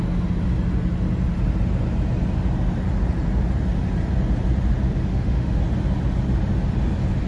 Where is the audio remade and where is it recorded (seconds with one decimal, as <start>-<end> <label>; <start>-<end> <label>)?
0.0-5.1 recorded; 5.1-5.6 remade; 5.6-7.3 recorded